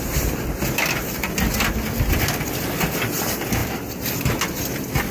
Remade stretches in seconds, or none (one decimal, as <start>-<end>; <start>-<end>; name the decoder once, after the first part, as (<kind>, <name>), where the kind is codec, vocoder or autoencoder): none